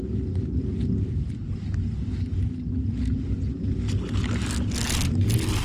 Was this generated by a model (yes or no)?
no